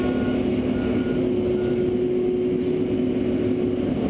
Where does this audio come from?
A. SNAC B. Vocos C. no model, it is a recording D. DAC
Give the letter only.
C